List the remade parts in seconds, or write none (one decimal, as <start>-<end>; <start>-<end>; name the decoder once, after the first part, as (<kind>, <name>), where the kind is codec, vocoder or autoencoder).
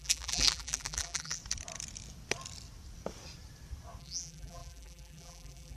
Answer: 0.0-1.4 (vocoder, BigVGAN v2); 4.0-5.8